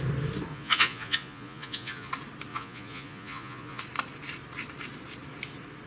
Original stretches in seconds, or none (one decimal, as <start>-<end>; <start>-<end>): 0.0-0.5; 2.1-2.5; 3.8-5.9